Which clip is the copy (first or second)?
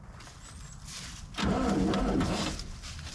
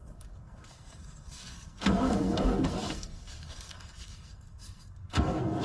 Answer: second